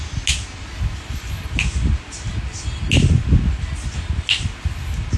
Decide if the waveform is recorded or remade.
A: recorded